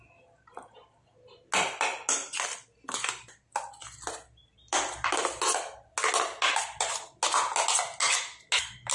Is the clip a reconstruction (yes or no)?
no